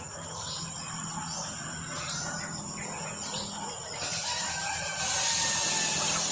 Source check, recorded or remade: recorded